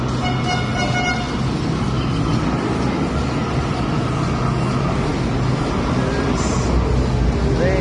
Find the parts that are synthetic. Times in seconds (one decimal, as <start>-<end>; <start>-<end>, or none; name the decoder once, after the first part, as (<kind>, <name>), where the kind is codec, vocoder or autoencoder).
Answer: none